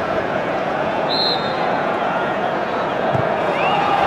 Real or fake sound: fake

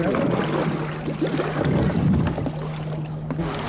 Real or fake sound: real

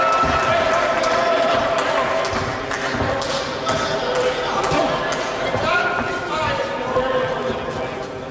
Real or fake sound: real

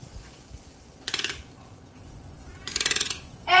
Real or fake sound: fake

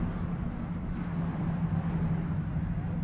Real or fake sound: real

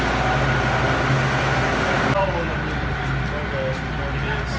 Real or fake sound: real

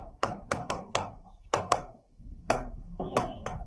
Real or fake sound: fake